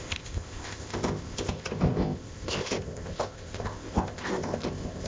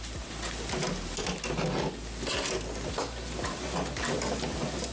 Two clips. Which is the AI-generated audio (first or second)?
first